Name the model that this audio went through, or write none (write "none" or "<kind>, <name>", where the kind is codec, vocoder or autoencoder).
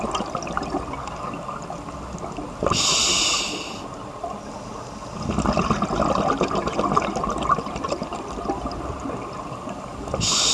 none